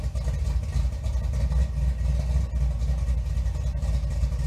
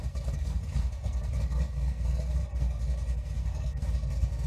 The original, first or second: first